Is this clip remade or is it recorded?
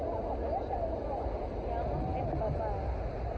recorded